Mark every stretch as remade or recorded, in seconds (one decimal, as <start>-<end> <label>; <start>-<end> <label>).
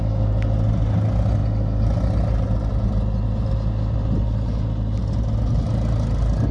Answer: 0.0-6.5 recorded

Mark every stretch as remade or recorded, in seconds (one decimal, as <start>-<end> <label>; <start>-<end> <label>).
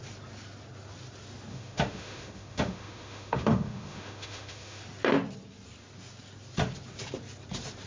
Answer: 0.0-1.5 recorded; 1.5-4.8 remade; 4.8-7.9 recorded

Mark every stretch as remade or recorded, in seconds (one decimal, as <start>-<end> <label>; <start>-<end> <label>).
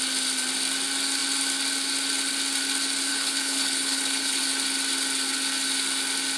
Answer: 0.0-3.1 recorded; 3.1-4.4 remade; 4.4-6.4 recorded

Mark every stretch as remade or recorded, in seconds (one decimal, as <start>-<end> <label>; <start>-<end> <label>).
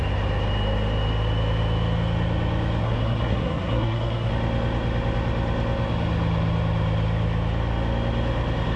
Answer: 0.0-2.8 recorded; 2.8-4.3 remade; 4.3-8.8 recorded